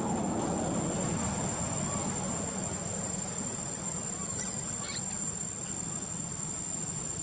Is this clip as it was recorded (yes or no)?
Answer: yes